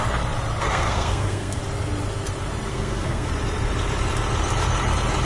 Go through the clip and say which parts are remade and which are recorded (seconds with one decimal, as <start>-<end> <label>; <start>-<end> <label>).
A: 0.0-0.6 recorded; 0.6-1.6 remade; 1.6-2.7 recorded; 2.7-3.3 remade; 3.3-5.2 recorded